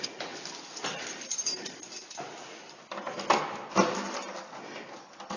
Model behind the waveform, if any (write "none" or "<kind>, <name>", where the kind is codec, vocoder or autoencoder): none